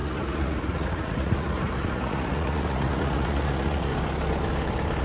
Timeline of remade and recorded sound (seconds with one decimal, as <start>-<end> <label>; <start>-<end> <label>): 0.0-3.9 remade; 3.9-5.0 recorded